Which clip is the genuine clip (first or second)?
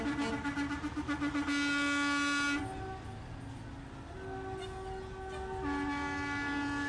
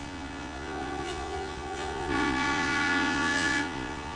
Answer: first